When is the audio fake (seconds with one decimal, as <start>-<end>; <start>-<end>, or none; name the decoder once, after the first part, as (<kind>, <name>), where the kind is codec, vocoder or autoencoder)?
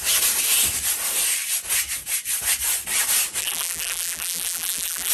3.4-5.1 (vocoder, BigVGAN v2)